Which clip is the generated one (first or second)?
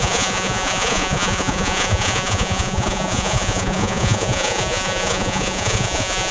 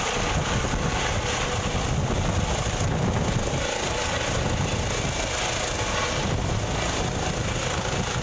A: first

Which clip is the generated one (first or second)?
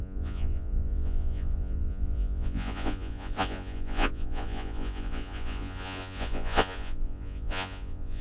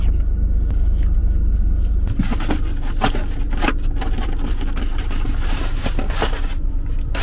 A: first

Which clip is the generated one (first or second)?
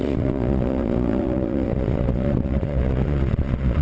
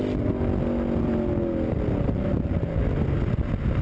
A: first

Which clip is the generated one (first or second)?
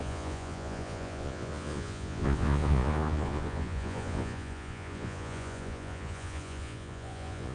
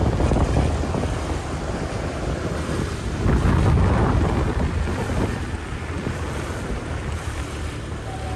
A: first